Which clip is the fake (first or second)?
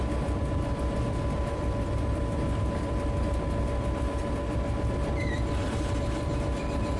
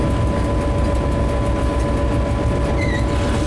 first